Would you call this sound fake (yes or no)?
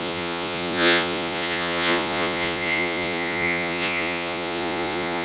yes